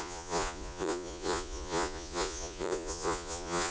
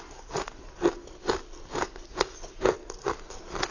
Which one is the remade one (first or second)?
first